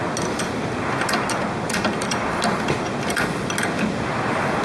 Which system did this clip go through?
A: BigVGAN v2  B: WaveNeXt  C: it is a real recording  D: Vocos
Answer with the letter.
C